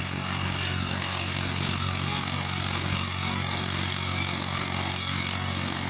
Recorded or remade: remade